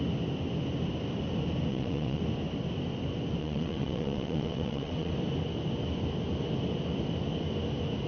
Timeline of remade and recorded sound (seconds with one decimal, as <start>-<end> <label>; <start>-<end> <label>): 0.0-1.7 recorded; 1.7-2.2 remade; 2.2-3.4 recorded; 3.4-5.1 remade; 5.1-8.1 recorded